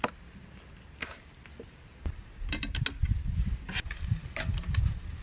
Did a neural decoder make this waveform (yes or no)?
no